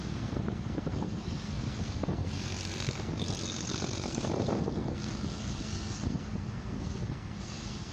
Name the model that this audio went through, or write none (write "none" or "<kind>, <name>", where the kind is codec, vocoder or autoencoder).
codec, SNAC